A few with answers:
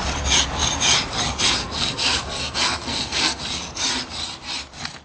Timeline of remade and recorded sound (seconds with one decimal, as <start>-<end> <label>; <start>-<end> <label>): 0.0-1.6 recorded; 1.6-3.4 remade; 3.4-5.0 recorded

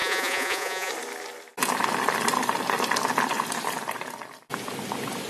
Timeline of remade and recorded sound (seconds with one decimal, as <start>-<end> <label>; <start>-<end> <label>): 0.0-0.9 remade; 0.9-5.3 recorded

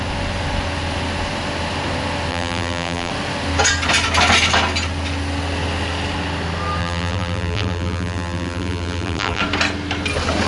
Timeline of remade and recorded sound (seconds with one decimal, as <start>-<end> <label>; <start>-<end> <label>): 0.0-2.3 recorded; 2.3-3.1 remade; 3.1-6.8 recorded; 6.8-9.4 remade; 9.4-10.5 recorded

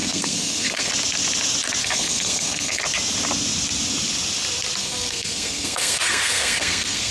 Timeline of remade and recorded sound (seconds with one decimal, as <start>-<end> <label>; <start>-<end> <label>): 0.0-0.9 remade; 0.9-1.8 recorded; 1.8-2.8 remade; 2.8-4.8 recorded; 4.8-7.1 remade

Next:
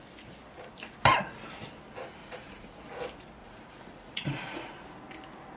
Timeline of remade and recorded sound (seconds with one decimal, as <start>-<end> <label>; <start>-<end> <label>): 0.0-2.2 recorded; 2.2-2.8 remade; 2.8-3.4 recorded; 3.4-4.7 remade; 4.7-5.6 recorded

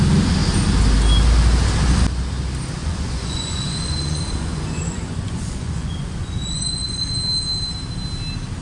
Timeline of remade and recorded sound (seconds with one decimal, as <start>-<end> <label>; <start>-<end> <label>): 0.0-2.8 recorded; 2.8-7.1 remade; 7.1-8.6 recorded